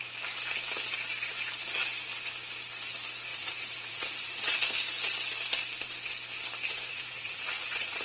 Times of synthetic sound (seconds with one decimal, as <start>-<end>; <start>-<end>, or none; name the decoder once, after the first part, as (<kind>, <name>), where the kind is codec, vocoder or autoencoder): 3.3-4.6 (vocoder, WaveNeXt); 6.9-8.0